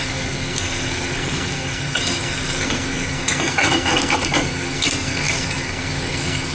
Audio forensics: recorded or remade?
remade